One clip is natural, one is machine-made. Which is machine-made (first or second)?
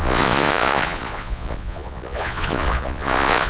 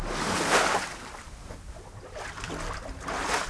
first